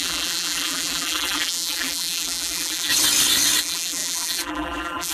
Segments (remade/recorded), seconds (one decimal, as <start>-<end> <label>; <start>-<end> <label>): 0.0-2.9 remade; 2.9-3.6 recorded; 3.6-5.1 remade